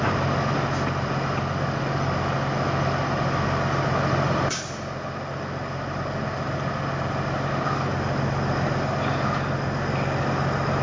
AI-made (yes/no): no